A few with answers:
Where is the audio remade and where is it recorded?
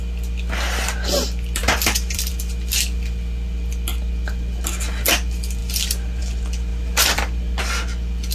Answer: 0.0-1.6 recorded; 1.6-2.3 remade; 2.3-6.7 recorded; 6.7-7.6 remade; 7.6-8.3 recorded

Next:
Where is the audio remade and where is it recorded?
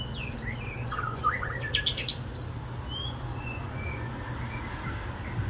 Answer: 0.0-0.8 recorded; 0.8-1.5 remade; 1.5-3.3 recorded; 3.3-4.2 remade; 4.2-5.5 recorded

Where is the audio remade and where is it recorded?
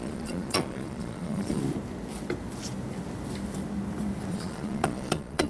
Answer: 0.0-1.6 remade; 1.6-4.3 recorded; 4.3-5.5 remade